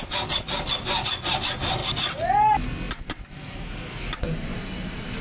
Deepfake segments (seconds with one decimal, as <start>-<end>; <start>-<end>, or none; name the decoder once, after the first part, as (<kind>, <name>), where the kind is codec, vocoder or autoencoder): none